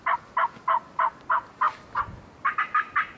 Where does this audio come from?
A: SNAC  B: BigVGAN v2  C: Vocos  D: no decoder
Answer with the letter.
D